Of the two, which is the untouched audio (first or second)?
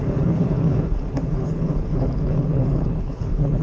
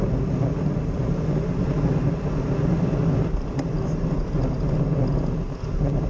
second